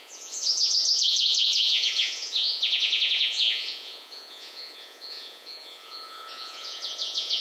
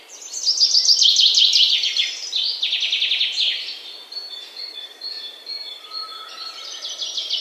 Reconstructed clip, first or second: first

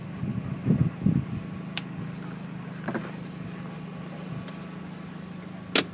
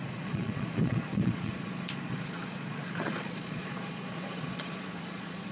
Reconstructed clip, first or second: second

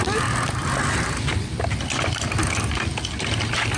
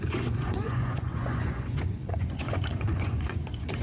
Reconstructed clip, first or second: second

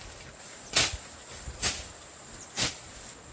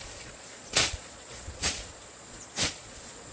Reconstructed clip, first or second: second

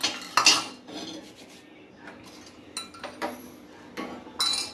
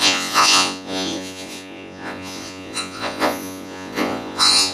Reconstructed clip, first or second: second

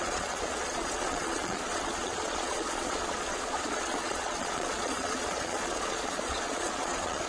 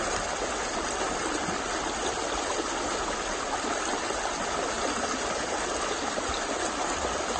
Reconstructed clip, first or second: first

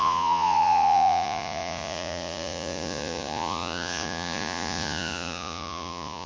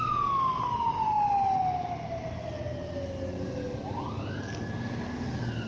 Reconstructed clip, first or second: first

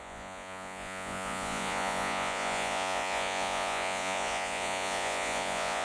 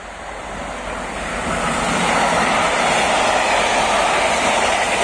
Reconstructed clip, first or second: first